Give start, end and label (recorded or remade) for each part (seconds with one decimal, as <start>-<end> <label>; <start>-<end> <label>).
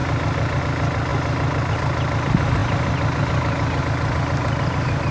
0.0-5.1 recorded